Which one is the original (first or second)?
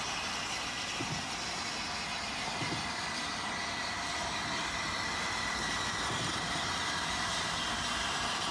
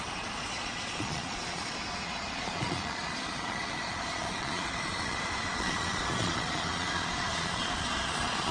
first